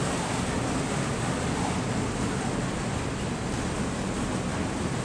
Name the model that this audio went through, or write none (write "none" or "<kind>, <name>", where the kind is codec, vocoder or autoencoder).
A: none